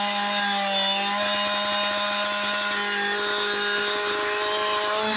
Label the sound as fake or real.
real